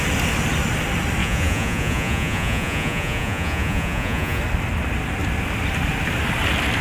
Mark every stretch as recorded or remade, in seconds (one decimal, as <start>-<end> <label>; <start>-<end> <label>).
0.0-1.2 recorded; 1.2-4.4 remade; 4.4-6.8 recorded